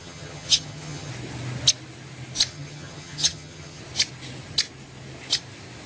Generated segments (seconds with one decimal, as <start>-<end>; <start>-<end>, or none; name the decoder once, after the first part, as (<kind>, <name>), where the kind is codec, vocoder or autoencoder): 0.0-1.1 (vocoder, HiFi-GAN); 2.5-3.8